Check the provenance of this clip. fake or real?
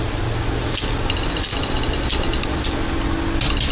real